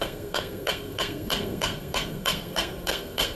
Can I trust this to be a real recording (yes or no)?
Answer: no